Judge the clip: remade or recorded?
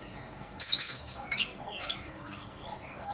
remade